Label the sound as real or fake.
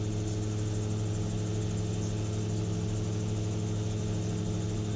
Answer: real